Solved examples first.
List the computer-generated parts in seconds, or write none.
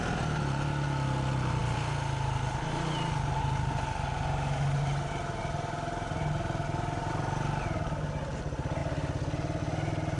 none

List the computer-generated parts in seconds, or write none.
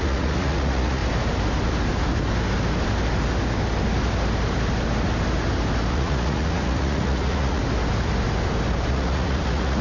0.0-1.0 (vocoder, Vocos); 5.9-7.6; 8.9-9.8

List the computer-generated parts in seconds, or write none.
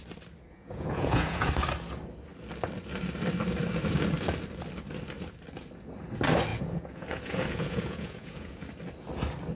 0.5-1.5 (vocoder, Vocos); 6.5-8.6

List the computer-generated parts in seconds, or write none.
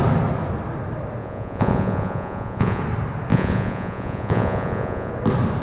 1.2-2.8 (vocoder, Vocos); 3.3-5.1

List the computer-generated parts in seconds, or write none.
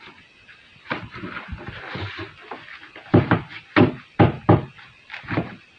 none